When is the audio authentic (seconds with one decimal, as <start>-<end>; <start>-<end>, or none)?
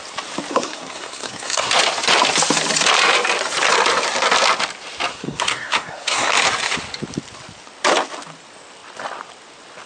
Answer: 0.0-0.5; 1.7-5.1; 6.3-9.9